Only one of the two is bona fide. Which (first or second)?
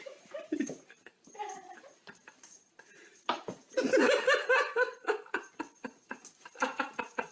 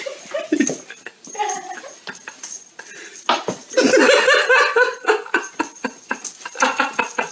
second